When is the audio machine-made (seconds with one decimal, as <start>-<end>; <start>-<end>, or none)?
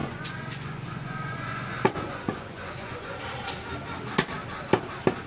0.0-3.2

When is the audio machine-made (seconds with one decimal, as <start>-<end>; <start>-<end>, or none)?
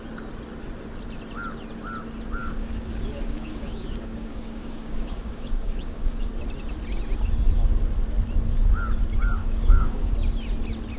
2.4-6.3; 9.4-10.1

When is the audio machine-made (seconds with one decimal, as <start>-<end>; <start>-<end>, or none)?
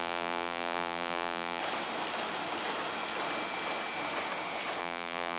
0.0-1.6; 4.8-5.4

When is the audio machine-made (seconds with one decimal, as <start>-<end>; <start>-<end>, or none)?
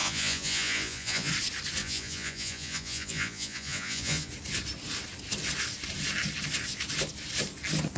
0.0-1.3; 1.8-4.3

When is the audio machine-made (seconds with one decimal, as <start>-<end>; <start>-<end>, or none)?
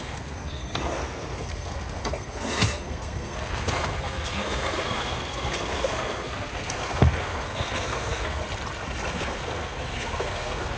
0.0-8.4; 9.1-10.8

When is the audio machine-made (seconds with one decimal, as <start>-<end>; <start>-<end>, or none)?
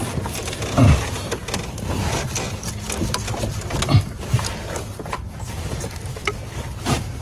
none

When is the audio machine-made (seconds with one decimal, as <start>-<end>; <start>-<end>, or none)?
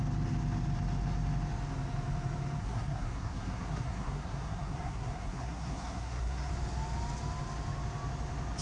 2.6-6.5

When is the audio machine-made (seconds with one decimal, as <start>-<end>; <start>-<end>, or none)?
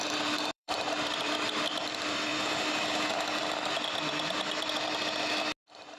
0.0-2.3